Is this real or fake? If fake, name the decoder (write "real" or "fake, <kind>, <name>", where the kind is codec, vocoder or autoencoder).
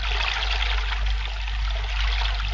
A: real